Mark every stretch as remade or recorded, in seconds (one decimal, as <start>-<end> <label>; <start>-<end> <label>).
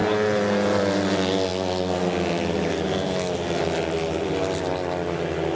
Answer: 0.0-5.6 recorded